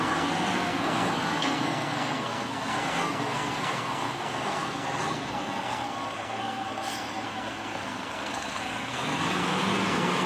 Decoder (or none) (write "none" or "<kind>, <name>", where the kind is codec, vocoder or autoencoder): codec, SNAC